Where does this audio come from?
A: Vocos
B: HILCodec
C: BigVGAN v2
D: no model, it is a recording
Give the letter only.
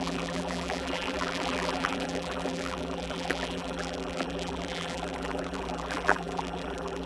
C